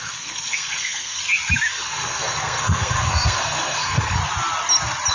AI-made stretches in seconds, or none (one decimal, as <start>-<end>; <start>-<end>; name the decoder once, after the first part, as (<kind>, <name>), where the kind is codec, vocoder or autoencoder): 0.0-1.2 (codec, SNAC); 1.7-4.2